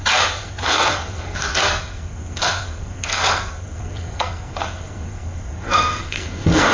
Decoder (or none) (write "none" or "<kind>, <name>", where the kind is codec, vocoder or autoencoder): codec, SNAC